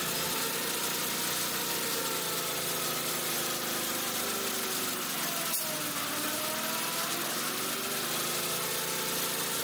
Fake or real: real